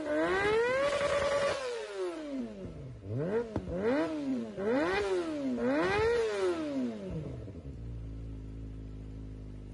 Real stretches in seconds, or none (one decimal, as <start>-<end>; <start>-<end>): 0.0-1.1; 2.4-4.3; 5.0-9.7